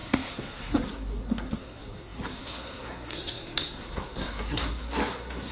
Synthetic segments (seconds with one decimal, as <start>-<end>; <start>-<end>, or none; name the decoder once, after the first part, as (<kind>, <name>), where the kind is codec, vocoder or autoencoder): 0.0-5.5 (codec, SNAC)